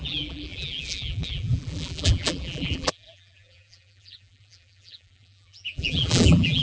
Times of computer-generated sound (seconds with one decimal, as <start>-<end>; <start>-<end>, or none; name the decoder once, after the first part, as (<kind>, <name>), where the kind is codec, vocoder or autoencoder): 0.0-6.6 (vocoder, BigVGAN v2)